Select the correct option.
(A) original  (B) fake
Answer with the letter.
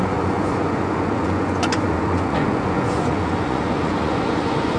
B